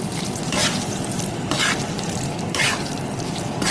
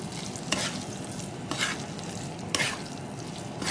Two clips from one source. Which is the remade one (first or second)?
first